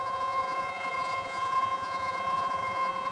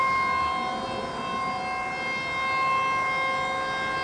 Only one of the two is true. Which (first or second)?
second